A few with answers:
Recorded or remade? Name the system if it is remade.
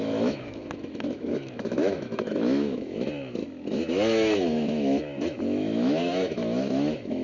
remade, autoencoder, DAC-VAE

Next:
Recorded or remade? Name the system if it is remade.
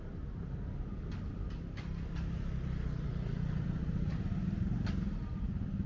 recorded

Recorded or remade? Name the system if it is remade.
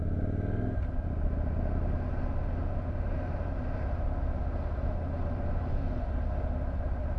recorded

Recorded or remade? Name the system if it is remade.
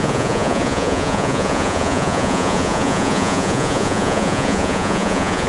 remade, vocoder, Vocos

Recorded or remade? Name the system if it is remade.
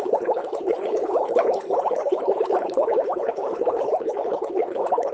remade, codec, HILCodec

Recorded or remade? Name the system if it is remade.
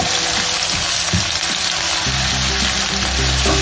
recorded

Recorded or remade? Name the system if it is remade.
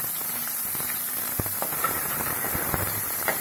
remade, vocoder, BigVGAN v2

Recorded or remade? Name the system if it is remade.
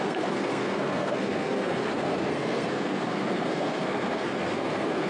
remade, codec, SNAC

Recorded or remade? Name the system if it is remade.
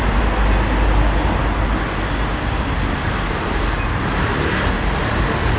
recorded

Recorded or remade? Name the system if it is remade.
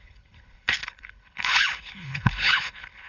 remade, codec, HILCodec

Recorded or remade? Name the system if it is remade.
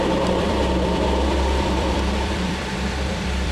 remade, vocoder, BigVGAN v2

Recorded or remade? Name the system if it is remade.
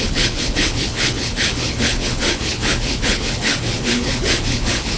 remade, codec, HILCodec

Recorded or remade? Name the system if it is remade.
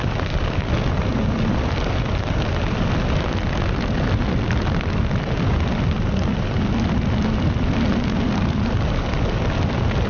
recorded